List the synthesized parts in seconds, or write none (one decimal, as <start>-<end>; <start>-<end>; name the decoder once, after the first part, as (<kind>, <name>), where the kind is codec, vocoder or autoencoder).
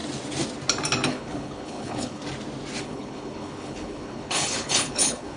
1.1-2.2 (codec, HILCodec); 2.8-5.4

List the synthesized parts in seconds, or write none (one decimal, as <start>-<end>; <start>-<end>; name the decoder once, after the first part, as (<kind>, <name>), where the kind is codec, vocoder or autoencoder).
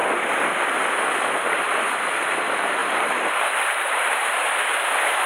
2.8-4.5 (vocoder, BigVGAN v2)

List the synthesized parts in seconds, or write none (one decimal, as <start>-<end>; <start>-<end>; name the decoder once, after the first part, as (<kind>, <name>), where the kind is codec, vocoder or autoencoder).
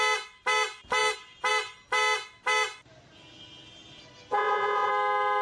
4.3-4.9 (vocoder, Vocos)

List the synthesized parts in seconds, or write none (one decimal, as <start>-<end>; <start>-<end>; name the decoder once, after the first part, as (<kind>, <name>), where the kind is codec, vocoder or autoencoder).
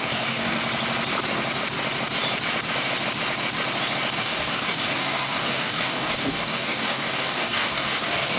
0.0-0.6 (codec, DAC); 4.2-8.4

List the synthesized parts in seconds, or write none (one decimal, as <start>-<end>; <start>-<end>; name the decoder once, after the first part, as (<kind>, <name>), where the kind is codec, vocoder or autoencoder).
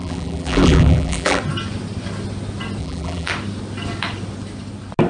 0.0-1.4 (vocoder, BigVGAN v2); 2.8-3.3